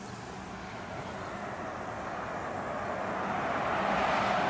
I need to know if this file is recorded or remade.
recorded